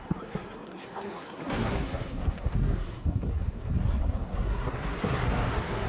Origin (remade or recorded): remade